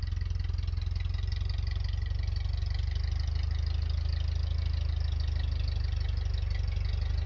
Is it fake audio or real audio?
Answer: real